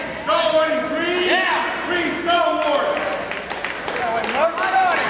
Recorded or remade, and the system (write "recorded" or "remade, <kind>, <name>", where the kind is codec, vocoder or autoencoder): recorded